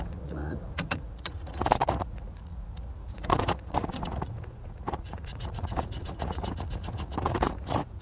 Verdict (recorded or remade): remade